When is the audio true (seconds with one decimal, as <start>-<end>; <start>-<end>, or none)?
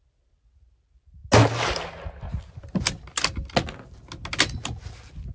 0.0-5.3